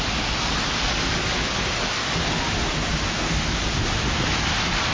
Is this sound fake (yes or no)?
no